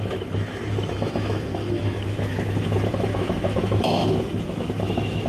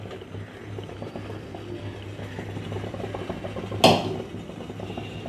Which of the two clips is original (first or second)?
second